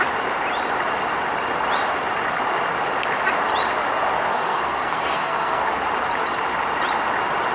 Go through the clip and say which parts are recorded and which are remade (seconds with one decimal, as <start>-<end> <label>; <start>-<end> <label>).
0.0-4.3 recorded; 4.3-5.6 remade; 5.6-7.5 recorded